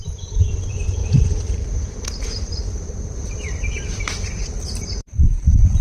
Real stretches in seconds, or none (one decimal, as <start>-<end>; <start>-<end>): none